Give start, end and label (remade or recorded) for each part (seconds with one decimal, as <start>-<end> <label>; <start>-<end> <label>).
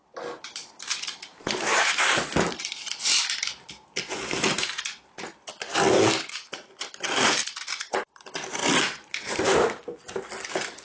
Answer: 0.0-8.6 recorded; 8.6-9.4 remade; 9.4-10.8 recorded